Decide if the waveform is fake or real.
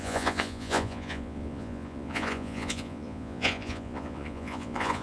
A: fake